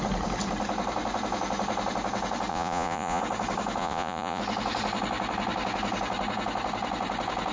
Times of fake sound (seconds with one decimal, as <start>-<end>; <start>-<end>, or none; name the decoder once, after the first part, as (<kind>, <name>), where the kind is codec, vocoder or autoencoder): 2.5-3.2 (vocoder, Vocos); 3.8-4.4